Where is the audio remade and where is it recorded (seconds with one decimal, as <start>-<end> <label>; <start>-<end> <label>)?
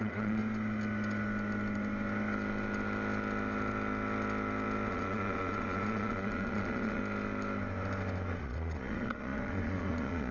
0.0-0.4 remade; 0.4-4.9 recorded; 4.9-7.0 remade; 7.0-8.4 recorded; 8.4-10.3 remade